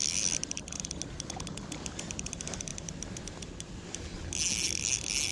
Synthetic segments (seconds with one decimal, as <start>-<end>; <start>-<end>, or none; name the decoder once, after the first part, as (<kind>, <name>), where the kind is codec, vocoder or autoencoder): 0.0-0.6 (vocoder, BigVGAN v2)

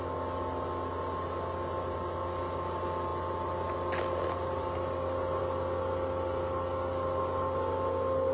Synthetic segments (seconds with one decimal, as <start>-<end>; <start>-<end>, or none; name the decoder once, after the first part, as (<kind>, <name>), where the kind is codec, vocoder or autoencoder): none

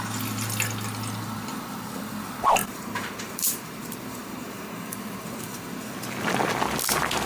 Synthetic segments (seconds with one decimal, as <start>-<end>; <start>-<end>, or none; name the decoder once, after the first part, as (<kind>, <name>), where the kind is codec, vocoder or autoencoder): 2.6-5.6 (vocoder, BigVGAN v2)

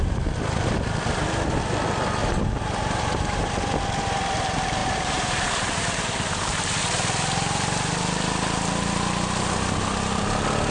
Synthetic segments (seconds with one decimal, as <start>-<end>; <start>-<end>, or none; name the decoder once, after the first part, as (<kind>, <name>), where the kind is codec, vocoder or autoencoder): 2.2-3.5 (vocoder, BigVGAN v2); 4.8-6.8